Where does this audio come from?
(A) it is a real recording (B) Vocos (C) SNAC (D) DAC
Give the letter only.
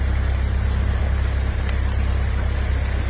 A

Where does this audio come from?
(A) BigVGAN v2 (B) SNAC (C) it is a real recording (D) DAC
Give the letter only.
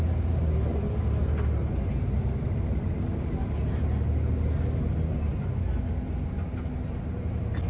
C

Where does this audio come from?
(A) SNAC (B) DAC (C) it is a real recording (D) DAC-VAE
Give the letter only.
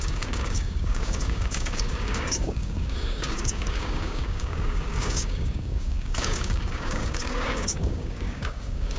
B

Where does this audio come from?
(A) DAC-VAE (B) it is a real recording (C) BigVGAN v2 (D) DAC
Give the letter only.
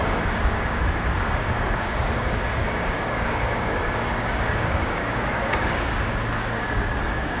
D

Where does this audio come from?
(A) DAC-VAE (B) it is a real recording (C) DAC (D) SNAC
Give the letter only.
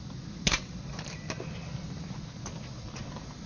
B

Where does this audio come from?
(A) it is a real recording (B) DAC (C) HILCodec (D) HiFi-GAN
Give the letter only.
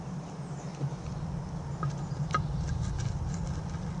A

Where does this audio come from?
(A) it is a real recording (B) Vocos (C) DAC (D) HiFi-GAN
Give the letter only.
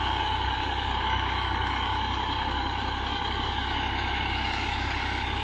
C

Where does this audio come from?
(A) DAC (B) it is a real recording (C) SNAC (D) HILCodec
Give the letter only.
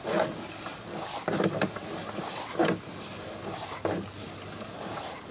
B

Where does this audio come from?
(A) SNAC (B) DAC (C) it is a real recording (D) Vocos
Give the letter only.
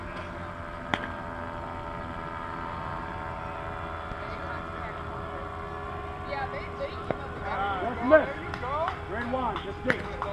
C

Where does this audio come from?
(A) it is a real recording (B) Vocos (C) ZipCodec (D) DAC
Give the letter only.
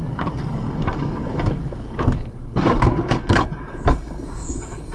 D